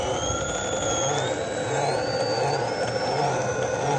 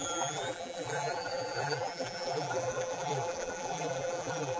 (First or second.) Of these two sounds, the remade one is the second